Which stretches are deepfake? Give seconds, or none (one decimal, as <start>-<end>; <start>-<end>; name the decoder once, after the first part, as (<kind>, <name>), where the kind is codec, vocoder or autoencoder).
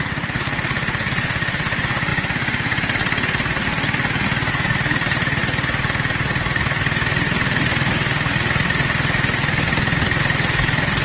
0.0-2.1 (vocoder, BigVGAN v2); 4.5-5.4; 10.2-11.0